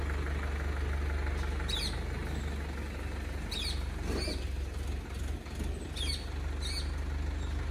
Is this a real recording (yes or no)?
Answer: yes